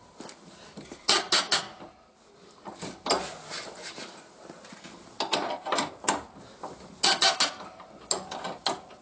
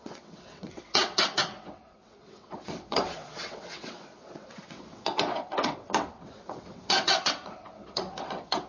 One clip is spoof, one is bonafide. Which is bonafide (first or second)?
first